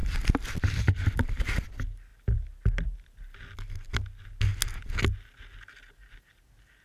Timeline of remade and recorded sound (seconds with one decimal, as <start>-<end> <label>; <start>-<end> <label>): 0.0-6.8 recorded